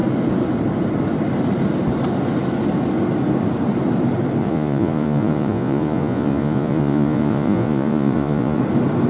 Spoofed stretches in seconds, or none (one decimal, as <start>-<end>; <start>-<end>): 4.4-8.6